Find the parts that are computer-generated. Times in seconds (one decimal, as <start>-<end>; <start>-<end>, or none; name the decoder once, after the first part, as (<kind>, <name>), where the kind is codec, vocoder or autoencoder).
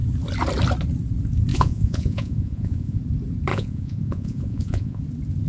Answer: 1.5-3.0 (vocoder, Vocos); 3.5-5.0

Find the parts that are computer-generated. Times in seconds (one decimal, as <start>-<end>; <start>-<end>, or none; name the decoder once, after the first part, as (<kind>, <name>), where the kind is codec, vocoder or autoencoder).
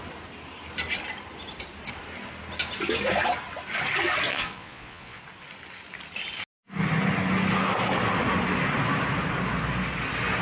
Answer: 4.3-5.2 (vocoder, Vocos)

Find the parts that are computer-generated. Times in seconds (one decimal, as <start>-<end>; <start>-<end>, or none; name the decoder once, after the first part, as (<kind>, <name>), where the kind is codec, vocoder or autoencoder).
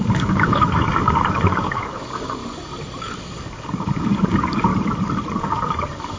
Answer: 0.0-2.4 (codec, DAC); 3.0-4.7; 5.4-6.2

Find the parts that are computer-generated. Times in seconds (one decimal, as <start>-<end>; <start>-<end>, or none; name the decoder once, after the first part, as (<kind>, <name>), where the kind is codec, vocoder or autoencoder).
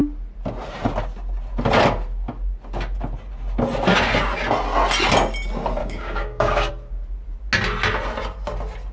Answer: 5.8-6.7 (codec, DAC)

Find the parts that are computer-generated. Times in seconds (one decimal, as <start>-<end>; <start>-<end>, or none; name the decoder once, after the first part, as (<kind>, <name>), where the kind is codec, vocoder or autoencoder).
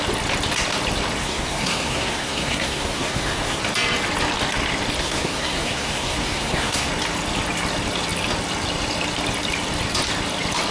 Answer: 1.2-3.6 (codec, SNAC); 5.0-6.9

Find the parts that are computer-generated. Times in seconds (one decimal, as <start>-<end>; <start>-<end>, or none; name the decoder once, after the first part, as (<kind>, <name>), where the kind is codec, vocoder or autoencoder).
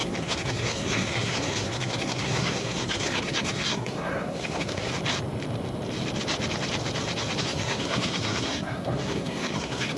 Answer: 0.0-4.9 (codec, SNAC); 7.4-10.0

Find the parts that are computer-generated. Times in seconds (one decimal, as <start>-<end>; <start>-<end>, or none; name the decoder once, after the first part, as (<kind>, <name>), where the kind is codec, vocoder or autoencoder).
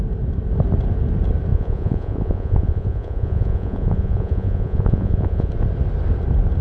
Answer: 1.5-5.5 (vocoder, Vocos)